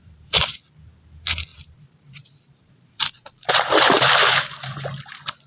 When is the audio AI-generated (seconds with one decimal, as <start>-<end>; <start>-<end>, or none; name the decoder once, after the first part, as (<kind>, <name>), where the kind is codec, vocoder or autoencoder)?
0.0-0.6 (vocoder, BigVGAN v2); 1.5-4.8